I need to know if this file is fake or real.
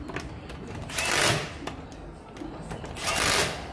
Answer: real